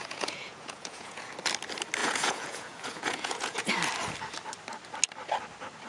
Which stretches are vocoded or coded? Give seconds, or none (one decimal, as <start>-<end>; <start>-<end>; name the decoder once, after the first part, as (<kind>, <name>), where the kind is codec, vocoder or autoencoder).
0.0-1.3 (vocoder, Vocos); 2.0-3.7